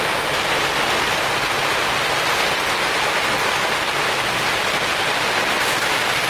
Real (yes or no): yes